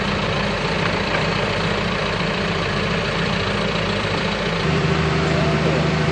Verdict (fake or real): fake